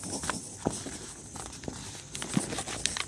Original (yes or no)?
yes